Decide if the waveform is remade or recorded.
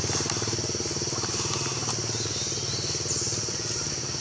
recorded